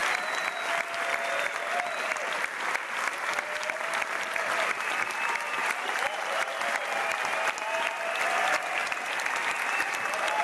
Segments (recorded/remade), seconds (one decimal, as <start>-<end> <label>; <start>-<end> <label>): 0.0-5.6 recorded; 5.6-6.5 remade; 6.5-10.4 recorded